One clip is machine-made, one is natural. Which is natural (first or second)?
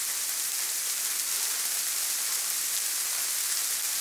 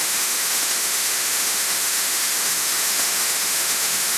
first